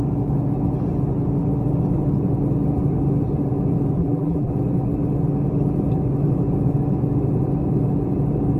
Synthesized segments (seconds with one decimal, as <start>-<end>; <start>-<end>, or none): 4.0-4.5